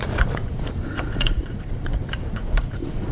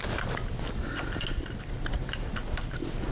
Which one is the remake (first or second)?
first